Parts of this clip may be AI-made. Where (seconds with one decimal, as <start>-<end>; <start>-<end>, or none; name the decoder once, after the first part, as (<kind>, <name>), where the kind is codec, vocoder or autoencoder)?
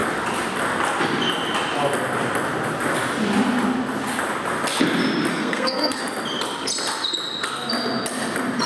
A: 5.3-6.0 (codec, SNAC)